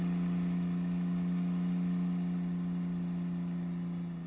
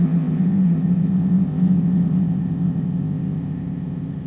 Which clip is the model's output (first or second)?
second